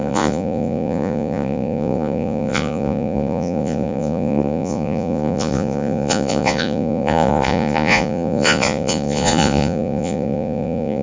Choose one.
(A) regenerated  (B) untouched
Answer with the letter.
A